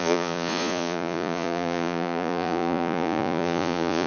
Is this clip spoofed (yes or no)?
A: yes